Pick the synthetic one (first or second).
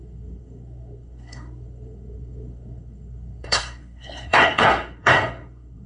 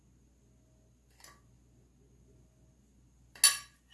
first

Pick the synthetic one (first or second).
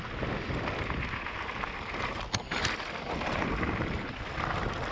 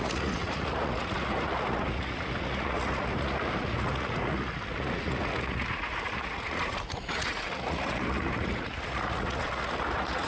second